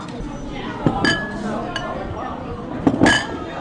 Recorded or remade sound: recorded